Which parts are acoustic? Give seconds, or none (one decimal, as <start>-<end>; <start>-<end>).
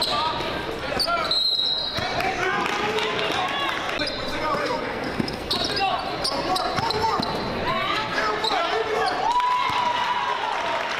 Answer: 0.0-4.6; 5.5-7.7; 8.2-11.0